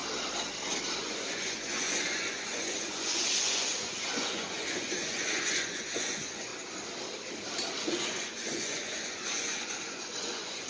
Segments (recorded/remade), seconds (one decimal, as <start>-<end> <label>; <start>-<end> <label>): 0.0-1.0 recorded; 1.0-6.5 remade; 6.5-7.8 recorded; 7.8-10.7 remade

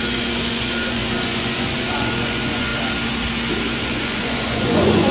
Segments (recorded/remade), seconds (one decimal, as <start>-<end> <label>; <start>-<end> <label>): 0.0-2.7 remade; 2.7-3.8 recorded; 3.8-5.1 remade

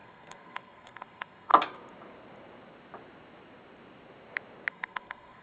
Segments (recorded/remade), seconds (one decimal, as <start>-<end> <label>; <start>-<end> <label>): 0.0-1.5 remade; 1.5-4.7 recorded; 4.7-5.4 remade

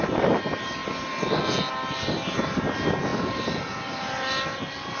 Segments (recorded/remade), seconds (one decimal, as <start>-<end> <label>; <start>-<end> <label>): 0.0-5.0 recorded

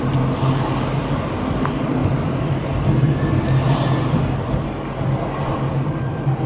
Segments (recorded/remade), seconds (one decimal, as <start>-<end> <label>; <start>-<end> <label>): 0.0-6.5 recorded